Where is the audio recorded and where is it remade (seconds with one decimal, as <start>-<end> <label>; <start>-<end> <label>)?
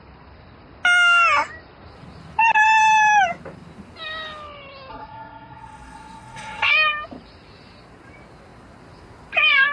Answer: 0.0-4.9 recorded; 4.9-6.7 remade; 6.7-9.7 recorded